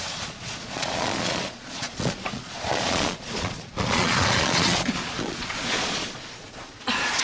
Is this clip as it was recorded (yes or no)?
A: no